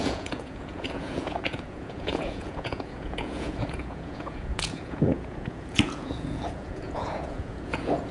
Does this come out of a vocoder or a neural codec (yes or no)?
yes